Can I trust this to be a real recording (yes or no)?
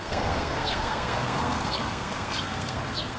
no